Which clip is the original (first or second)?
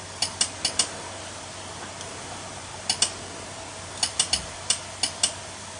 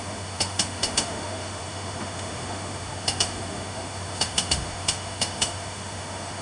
first